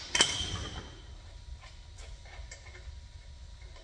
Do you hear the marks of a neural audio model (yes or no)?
no